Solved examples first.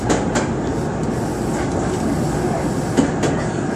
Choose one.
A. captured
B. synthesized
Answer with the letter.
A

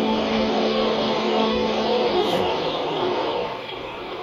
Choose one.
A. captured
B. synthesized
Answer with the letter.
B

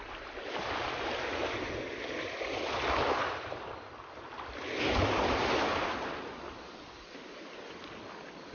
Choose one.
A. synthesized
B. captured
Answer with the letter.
B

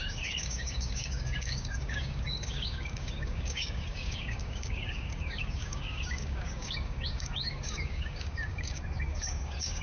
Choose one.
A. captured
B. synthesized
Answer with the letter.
B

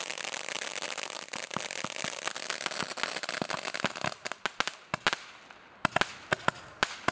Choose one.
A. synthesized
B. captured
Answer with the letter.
B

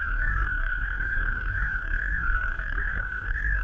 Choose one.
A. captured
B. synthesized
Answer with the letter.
B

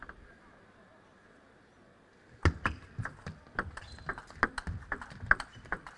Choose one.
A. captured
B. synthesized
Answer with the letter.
A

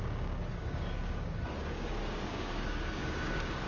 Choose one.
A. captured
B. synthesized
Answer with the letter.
B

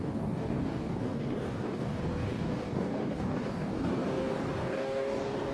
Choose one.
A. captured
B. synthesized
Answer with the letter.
B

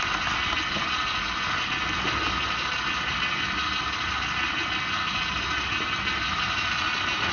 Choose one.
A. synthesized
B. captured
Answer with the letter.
B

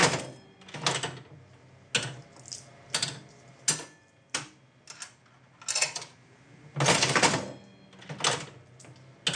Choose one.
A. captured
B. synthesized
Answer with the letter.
A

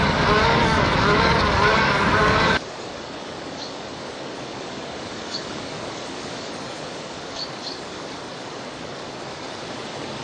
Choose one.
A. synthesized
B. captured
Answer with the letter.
A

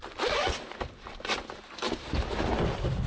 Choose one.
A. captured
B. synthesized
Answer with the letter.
A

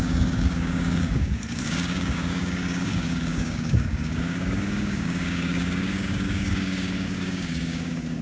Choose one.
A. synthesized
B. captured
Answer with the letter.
A